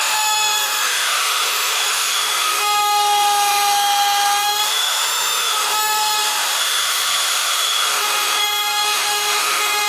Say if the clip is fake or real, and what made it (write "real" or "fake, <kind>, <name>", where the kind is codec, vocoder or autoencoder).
fake, autoencoder, DAC-VAE